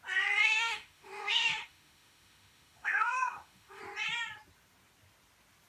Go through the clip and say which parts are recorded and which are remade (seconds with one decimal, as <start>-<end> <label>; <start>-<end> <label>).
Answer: 0.0-0.4 recorded; 0.4-3.8 remade; 3.8-5.7 recorded